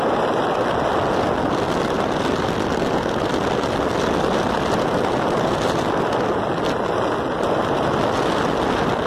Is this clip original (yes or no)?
yes